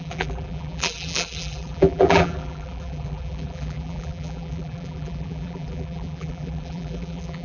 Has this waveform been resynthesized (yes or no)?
yes